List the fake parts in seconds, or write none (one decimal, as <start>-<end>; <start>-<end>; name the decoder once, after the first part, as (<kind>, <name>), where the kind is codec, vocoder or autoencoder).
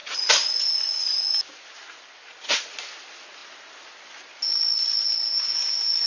none